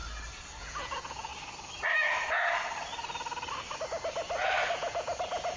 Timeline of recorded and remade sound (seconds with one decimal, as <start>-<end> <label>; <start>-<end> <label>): 0.0-0.6 recorded; 0.6-1.3 remade; 1.3-4.7 recorded; 4.7-5.6 remade